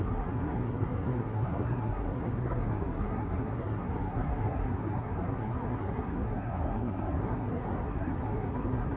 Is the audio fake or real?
fake